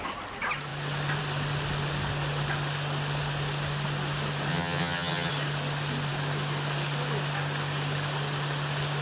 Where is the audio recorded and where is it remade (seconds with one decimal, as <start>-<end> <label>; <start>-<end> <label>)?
0.0-4.5 recorded; 4.5-5.3 remade; 5.3-9.0 recorded